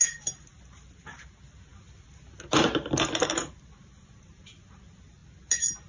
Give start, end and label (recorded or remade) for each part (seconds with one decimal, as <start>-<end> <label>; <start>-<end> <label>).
0.0-5.9 recorded